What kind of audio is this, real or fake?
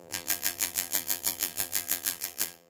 fake